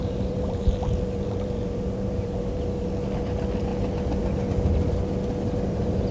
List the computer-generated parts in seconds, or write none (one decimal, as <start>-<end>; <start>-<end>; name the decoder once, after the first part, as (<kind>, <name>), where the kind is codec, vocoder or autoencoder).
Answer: 0.0-2.9 (vocoder, BigVGAN v2)